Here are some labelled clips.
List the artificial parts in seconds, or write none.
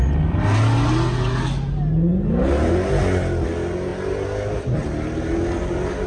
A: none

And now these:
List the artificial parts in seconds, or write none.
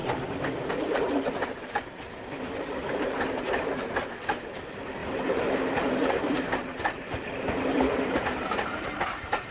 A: 0.0-2.2 (vocoder, BigVGAN v2); 2.8-3.6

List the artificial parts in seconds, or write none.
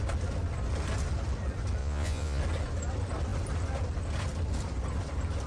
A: 1.8-2.4 (vocoder, Vocos)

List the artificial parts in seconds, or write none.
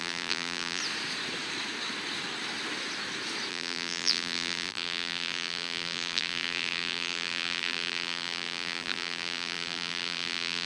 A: 0.0-0.8 (vocoder, BigVGAN v2); 3.5-10.7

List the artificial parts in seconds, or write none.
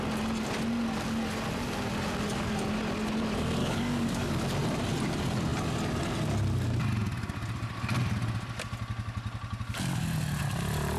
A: 3.6-4.4 (codec, DAC)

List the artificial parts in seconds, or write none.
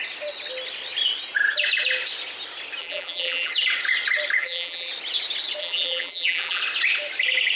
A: 2.8-3.5 (vocoder, BigVGAN v2); 4.4-4.9; 5.6-6.6